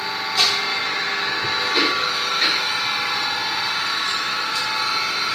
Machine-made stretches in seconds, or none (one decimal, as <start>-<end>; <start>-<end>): 0.7-2.6; 3.9-4.6